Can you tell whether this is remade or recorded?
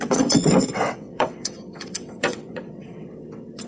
remade